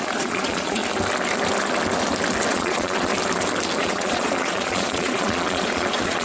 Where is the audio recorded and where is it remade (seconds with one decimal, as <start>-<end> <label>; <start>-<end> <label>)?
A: 0.0-0.8 remade; 0.8-2.5 recorded; 2.5-3.1 remade; 3.1-3.8 recorded; 3.8-6.2 remade